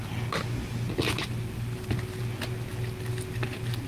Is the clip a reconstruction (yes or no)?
no